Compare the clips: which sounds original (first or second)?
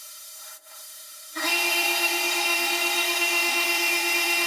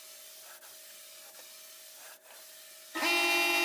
second